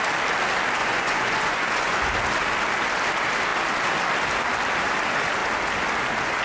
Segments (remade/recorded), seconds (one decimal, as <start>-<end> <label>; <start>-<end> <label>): 0.0-0.8 recorded; 0.8-2.1 remade; 2.1-6.4 recorded

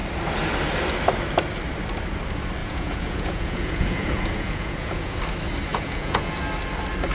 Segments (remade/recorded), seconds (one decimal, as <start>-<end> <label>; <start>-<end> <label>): 0.0-2.6 recorded; 2.6-5.2 remade; 5.2-5.7 recorded; 5.7-6.4 remade; 6.4-7.1 recorded

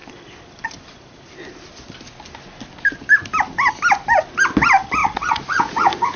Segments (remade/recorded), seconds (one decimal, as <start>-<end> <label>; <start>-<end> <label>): 0.0-5.0 recorded; 5.0-6.2 remade